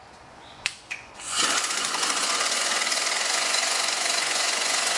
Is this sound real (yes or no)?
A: no